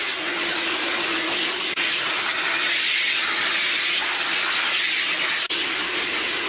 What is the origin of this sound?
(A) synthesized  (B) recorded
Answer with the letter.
B